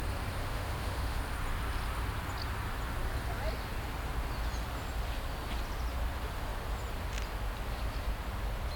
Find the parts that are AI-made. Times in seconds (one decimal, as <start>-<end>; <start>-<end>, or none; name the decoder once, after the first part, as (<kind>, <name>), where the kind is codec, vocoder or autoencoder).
0.4-1.2 (autoencoder, DAC-VAE)